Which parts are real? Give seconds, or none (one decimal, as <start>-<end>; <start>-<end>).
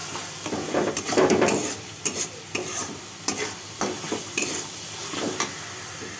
0.0-6.2